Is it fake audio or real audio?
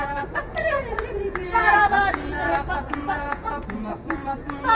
fake